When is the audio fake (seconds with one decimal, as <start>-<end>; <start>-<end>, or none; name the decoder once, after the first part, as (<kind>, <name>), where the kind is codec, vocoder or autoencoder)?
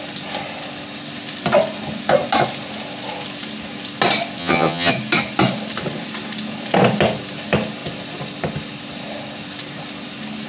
4.4-4.9 (vocoder, HiFi-GAN)